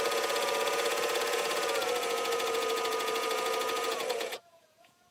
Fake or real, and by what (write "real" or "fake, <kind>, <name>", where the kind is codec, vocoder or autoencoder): fake, vocoder, Vocos